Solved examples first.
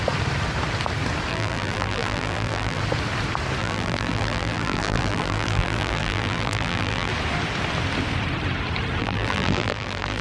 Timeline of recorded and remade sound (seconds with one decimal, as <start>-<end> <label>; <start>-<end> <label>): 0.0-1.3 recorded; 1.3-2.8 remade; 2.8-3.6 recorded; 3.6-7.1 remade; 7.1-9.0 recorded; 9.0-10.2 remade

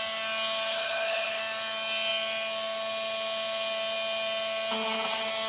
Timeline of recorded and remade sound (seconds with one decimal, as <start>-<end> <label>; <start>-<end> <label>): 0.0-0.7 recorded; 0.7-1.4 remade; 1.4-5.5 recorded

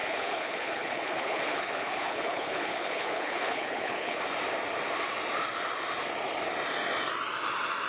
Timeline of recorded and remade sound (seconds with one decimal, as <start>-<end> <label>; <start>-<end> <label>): 0.0-4.2 remade; 4.2-7.9 recorded